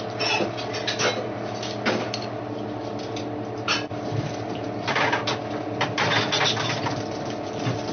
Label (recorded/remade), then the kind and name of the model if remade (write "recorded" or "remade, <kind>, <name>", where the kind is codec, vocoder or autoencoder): recorded